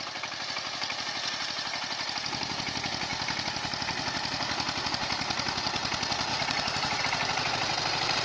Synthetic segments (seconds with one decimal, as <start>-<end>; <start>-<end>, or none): 6.3-7.0